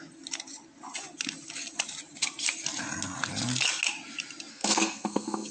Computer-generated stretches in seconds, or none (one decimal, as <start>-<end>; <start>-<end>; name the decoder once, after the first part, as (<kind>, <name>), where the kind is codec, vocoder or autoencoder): 4.5-5.5 (codec, SNAC)